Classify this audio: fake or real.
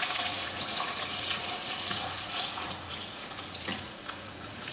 fake